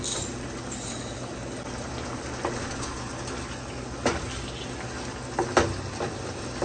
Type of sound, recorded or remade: recorded